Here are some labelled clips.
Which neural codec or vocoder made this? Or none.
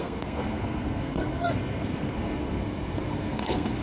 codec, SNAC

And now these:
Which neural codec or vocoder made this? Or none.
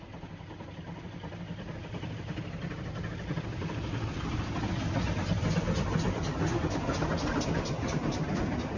none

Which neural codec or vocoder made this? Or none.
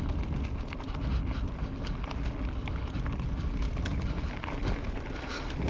none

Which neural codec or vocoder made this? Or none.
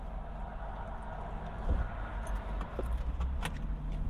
none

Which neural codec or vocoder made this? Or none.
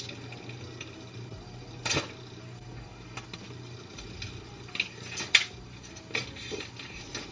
none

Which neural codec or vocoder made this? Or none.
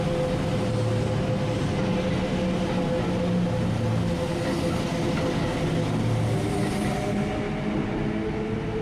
none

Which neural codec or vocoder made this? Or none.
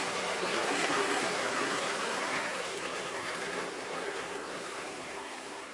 codec, SNAC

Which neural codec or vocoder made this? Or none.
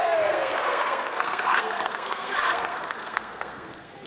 codec, SNAC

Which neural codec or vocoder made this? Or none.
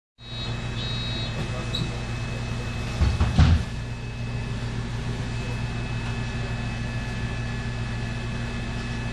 none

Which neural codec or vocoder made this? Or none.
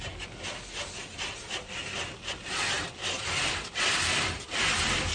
none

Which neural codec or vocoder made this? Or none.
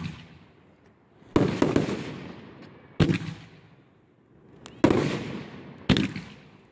none